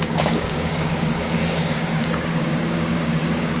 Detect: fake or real fake